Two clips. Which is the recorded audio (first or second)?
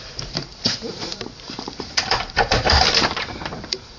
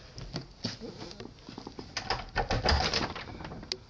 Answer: second